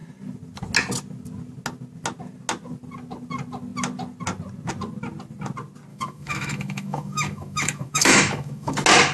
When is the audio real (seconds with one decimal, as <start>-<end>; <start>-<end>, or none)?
0.0-5.9; 8.7-9.1